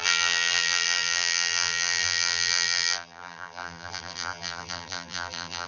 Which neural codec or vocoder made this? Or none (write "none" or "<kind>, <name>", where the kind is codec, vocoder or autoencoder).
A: vocoder, BigVGAN v2